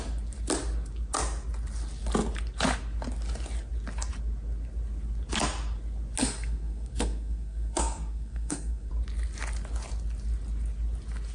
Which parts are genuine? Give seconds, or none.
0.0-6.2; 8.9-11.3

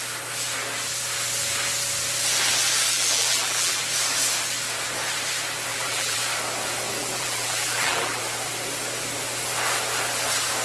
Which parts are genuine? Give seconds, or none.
0.0-2.9; 3.8-5.7; 6.2-7.0; 8.2-10.6

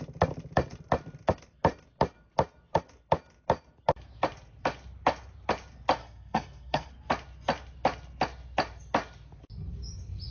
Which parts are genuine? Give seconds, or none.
0.0-6.0; 6.9-10.3

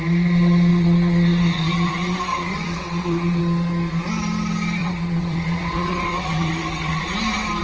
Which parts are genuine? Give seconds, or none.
0.0-0.7; 1.9-2.3; 3.4-4.8; 7.0-7.6